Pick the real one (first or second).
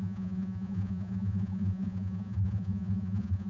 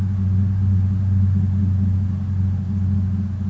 second